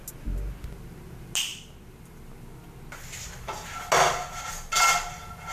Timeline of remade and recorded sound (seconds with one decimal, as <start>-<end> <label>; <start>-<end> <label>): 0.0-5.5 recorded